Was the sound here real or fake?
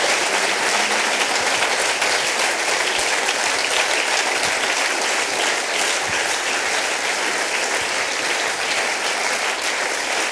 real